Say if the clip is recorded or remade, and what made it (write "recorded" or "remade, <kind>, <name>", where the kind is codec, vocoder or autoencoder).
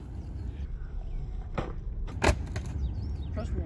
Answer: recorded